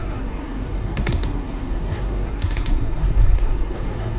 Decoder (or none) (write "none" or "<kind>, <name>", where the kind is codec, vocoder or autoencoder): codec, SNAC